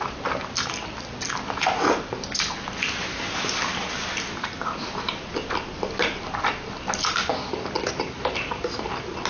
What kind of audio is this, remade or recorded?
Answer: recorded